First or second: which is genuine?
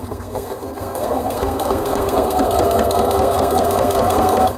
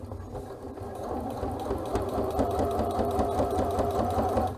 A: second